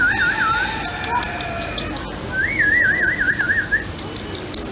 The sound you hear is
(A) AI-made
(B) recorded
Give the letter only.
B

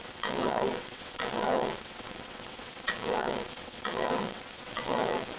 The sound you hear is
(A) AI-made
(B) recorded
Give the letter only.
A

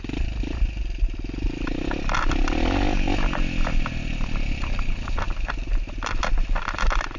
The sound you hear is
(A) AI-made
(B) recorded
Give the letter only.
B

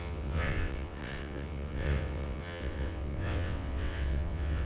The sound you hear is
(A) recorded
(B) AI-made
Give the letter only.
B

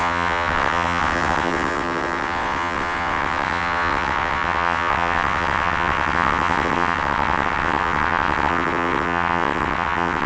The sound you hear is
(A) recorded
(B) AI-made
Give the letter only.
B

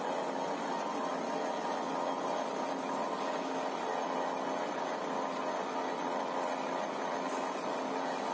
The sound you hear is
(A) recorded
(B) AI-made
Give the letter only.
A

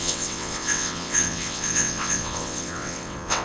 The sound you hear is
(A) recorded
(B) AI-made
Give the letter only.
B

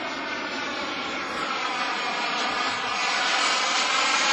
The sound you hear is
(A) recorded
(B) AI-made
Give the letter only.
A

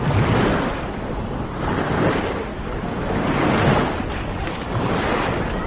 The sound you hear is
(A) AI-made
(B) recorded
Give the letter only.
B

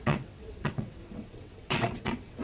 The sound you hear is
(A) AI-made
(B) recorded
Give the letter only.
A